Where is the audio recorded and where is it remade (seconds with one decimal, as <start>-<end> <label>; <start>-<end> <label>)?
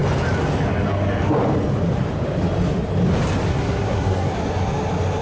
0.0-3.5 recorded; 3.5-4.3 remade; 4.3-5.2 recorded